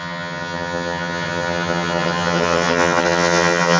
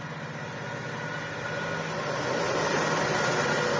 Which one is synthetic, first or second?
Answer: first